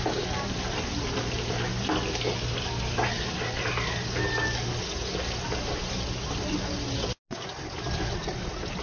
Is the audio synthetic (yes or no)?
no